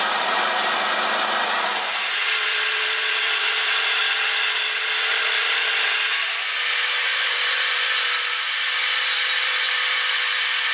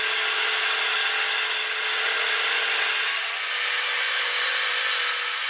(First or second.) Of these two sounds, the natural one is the second